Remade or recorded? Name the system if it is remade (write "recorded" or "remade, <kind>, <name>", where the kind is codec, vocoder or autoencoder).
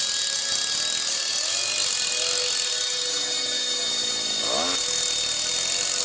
recorded